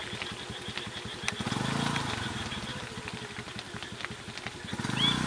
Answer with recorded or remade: recorded